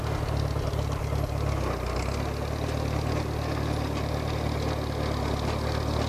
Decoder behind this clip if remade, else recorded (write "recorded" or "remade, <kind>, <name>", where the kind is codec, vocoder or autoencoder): recorded